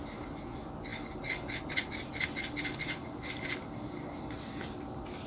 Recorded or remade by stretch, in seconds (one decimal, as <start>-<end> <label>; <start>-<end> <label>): 0.0-5.3 recorded